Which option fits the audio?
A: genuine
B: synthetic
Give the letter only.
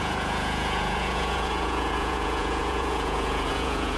B